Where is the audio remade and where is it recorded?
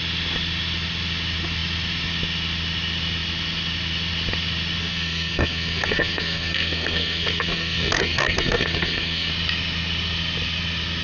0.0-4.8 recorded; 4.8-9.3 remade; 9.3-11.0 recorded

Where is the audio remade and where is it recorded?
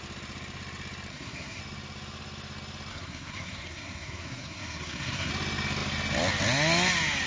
0.0-1.1 recorded; 1.1-1.6 remade; 1.6-2.9 recorded; 2.9-5.3 remade; 5.3-7.3 recorded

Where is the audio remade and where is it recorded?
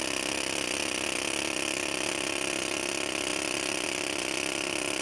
0.0-5.0 recorded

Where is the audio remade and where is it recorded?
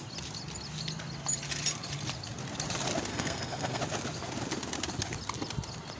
0.0-3.1 recorded; 3.1-3.8 remade; 3.8-6.0 recorded